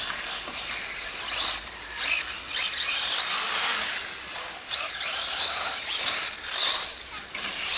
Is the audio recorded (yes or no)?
yes